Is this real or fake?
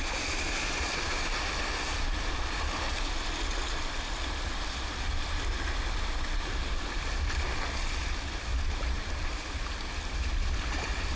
real